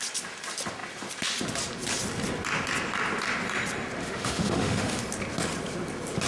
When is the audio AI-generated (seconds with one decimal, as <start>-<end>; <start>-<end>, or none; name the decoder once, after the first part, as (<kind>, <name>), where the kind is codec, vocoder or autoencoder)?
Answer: 4.0-5.0 (autoencoder, DAC-VAE)